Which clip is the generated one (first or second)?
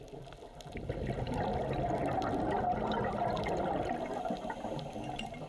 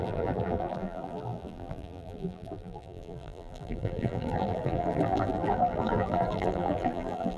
second